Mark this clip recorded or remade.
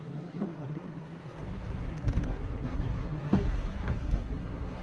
remade